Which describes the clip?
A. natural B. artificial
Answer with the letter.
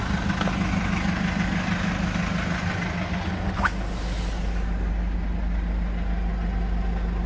A